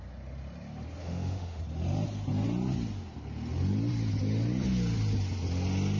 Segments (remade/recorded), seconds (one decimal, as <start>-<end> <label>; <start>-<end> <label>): 0.0-1.0 recorded; 1.0-1.6 remade; 1.6-6.0 recorded